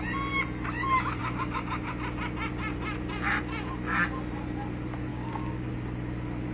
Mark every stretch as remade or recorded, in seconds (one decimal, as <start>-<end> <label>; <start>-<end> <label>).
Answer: 0.0-1.2 recorded; 1.2-1.9 remade; 1.9-5.1 recorded; 5.1-5.7 remade; 5.7-6.5 recorded

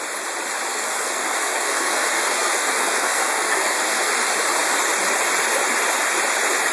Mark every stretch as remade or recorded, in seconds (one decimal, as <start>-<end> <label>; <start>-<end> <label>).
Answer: 0.0-0.7 recorded; 0.7-4.1 remade; 4.1-6.7 recorded

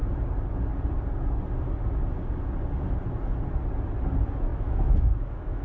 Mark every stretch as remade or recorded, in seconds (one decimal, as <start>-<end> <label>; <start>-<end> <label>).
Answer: 0.0-4.5 recorded; 4.5-5.6 remade

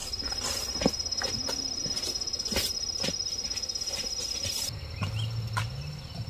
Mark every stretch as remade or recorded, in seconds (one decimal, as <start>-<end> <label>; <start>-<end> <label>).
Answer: 0.0-1.3 remade; 1.3-6.3 recorded

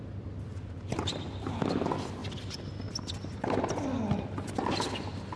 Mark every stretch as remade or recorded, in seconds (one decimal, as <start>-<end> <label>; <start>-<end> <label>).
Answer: 0.0-5.4 recorded

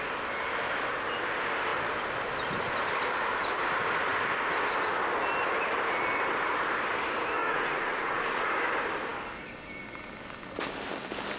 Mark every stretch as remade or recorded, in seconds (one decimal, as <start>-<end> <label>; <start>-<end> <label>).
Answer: 0.0-7.4 recorded; 7.4-8.5 remade; 8.5-11.4 recorded

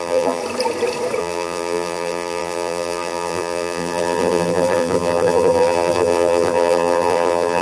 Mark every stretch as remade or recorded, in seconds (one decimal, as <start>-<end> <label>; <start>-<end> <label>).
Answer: 0.0-0.4 remade; 0.4-1.2 recorded; 1.2-7.6 remade